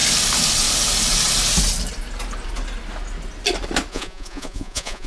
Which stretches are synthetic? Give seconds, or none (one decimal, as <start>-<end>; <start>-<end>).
3.9-5.1